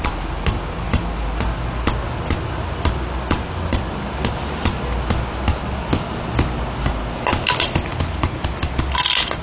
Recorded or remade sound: recorded